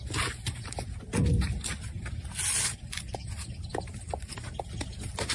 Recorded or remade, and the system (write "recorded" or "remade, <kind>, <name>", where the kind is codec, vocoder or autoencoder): recorded